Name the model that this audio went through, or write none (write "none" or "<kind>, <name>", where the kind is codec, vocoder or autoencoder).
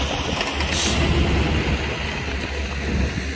none